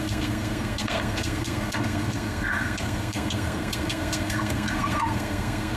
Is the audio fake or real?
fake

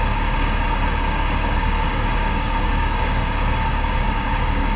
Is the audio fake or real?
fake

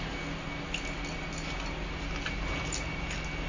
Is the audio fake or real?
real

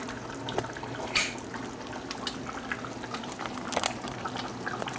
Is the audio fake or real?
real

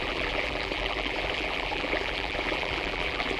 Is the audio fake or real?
fake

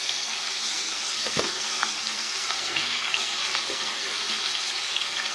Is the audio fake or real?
fake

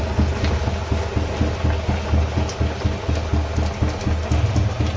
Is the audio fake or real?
real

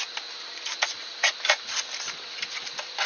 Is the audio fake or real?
real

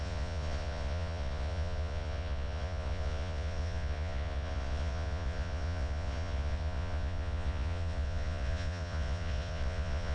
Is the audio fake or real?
fake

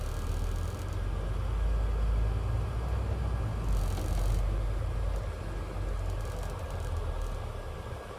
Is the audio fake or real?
real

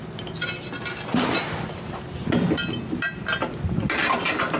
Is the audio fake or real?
real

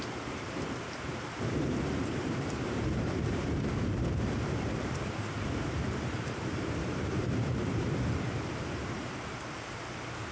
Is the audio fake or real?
fake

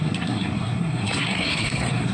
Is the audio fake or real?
fake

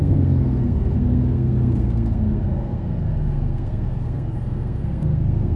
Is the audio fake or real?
fake